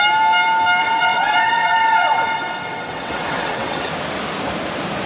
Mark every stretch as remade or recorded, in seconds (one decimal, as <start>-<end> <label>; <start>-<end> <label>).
0.0-0.8 recorded; 0.8-3.9 remade; 3.9-5.1 recorded